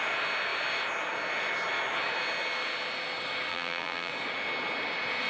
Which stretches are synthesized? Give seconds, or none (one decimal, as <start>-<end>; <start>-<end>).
3.5-4.1